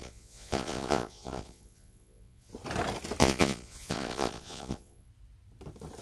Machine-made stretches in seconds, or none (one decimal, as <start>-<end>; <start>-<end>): 0.0-2.5; 3.2-5.1